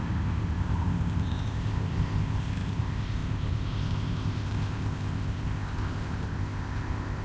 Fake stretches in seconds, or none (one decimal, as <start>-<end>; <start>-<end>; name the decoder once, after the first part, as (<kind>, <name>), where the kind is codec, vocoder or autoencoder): 0.0-7.2 (codec, ZipCodec)